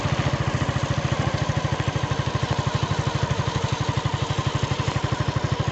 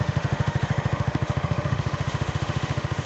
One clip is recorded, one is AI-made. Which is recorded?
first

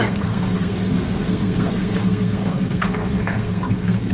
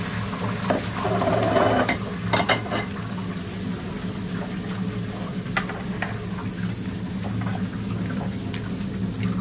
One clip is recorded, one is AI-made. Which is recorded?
second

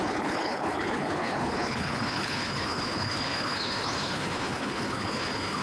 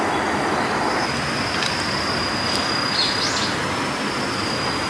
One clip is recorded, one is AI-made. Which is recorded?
second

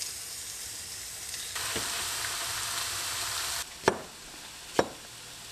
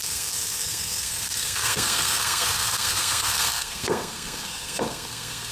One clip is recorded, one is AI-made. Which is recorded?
first